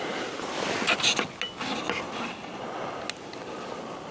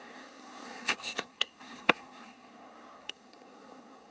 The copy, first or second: second